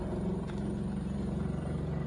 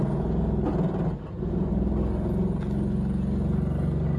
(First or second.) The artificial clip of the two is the first